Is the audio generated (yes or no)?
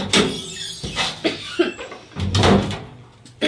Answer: no